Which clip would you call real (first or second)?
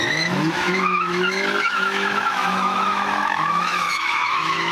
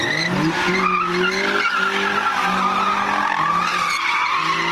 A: second